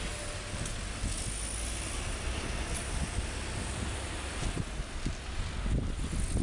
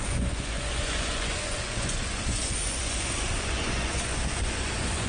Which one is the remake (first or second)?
second